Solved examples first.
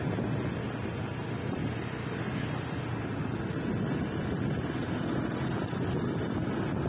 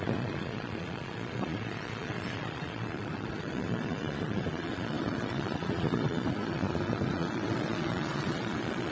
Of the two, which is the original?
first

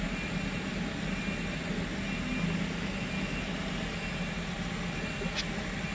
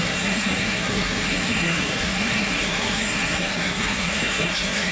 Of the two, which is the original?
first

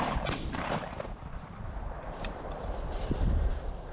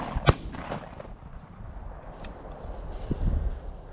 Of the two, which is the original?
second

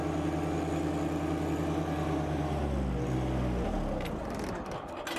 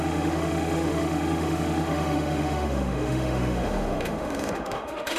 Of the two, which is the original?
first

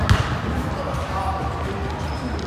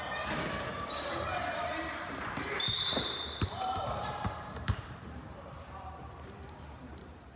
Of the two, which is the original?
first